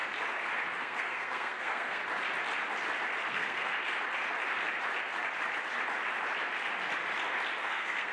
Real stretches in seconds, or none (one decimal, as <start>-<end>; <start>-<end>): 0.0-0.8; 2.0-3.3; 3.8-7.6